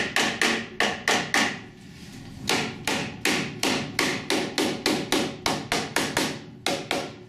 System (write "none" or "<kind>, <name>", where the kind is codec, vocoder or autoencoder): none